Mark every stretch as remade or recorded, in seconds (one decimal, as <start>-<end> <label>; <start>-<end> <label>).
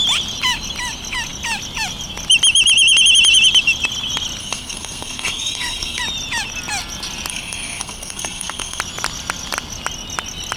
0.0-4.4 recorded; 4.4-6.0 remade; 6.0-7.3 recorded; 7.3-8.8 remade; 8.8-10.6 recorded